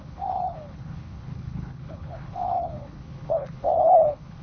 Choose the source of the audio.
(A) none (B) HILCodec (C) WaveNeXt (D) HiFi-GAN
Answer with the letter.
B